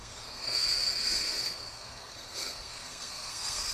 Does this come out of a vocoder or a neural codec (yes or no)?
yes